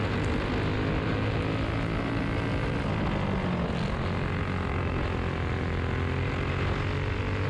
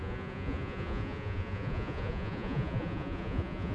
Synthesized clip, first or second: second